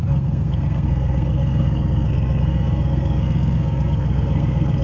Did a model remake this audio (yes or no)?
yes